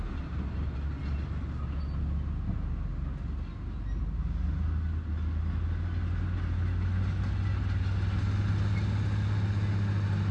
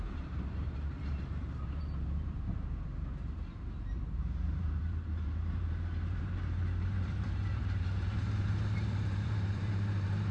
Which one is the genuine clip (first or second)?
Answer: first